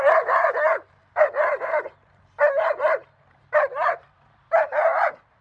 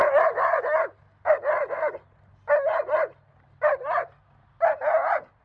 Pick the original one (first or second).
second